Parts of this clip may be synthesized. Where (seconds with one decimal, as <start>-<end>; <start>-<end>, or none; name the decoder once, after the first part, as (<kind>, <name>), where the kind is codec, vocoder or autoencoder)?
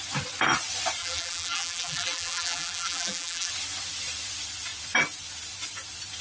1.0-3.5 (vocoder, BigVGAN v2)